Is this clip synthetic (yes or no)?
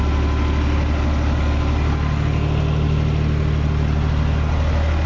no